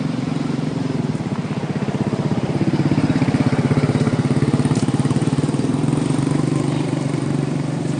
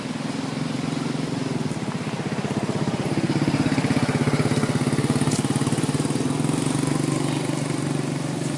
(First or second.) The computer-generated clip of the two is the first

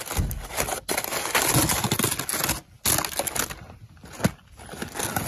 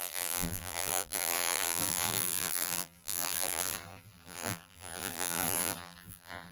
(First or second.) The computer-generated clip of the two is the second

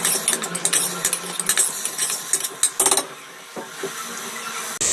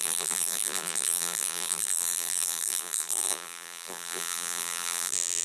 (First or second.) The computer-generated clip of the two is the second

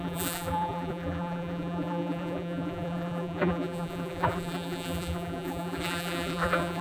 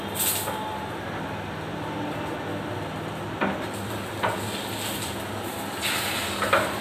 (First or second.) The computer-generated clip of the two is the first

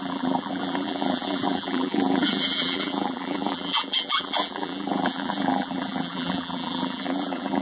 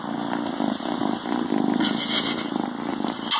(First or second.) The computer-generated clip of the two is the first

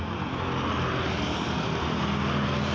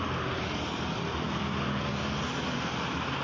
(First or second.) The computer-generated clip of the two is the second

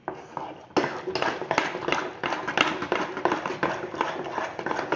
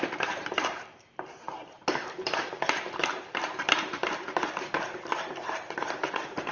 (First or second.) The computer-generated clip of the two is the second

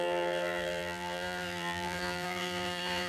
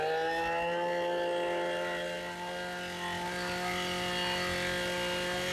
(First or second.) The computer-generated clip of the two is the first